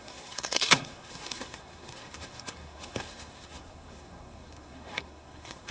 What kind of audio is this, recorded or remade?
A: remade